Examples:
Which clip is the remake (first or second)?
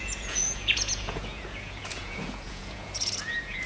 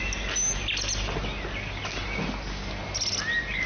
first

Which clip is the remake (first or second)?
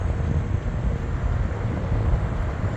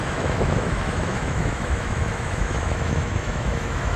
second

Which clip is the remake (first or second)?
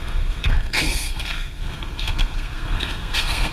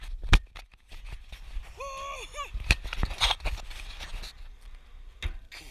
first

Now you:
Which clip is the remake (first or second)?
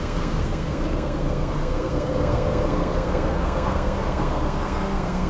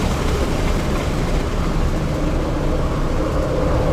first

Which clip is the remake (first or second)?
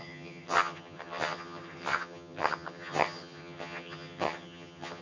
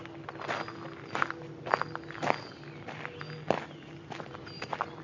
first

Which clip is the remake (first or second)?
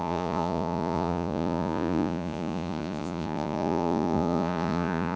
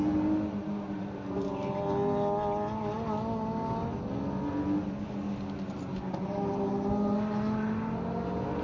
first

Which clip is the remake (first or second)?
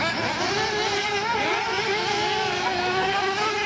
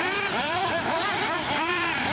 second